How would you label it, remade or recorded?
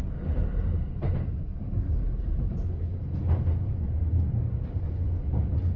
recorded